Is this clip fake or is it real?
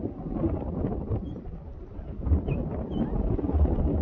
real